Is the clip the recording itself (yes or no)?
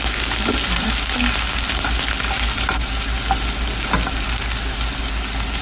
yes